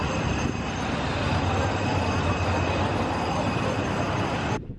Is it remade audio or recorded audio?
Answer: recorded